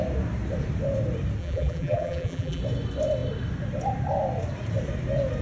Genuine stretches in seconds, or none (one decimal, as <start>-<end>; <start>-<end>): 0.0-1.4; 2.6-5.4